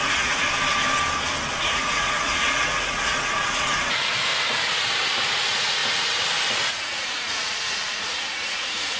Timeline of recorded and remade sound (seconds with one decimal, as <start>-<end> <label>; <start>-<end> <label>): 0.0-0.4 remade; 0.4-1.6 recorded; 1.6-4.3 remade; 4.3-5.2 recorded; 5.2-5.8 remade; 5.8-6.5 recorded; 6.5-9.0 remade

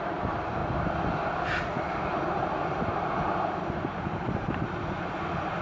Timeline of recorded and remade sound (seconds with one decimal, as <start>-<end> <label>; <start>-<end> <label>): 0.0-0.6 remade; 0.6-1.6 recorded; 1.6-5.6 remade

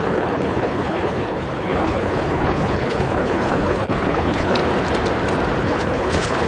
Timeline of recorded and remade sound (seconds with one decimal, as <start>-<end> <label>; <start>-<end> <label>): 0.0-4.6 remade; 4.6-5.6 recorded; 5.6-6.5 remade

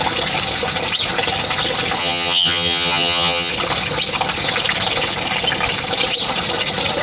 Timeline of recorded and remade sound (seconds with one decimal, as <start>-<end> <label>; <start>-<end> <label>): 0.0-2.0 recorded; 2.0-3.5 remade; 3.5-7.0 recorded

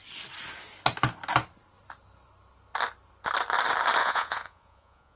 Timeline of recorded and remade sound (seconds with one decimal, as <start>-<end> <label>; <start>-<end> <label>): 0.0-4.0 recorded; 4.0-5.2 remade